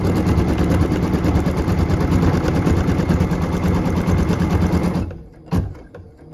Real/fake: real